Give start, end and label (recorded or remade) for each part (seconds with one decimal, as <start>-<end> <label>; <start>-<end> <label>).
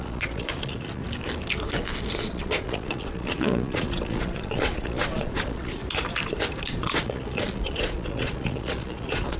0.0-1.0 remade; 1.0-2.2 recorded; 2.2-5.8 remade; 5.8-6.7 recorded; 6.7-9.4 remade